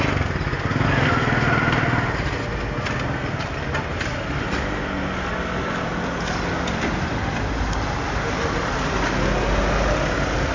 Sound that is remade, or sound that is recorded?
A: recorded